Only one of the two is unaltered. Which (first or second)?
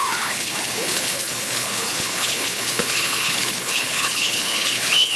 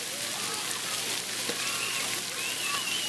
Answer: second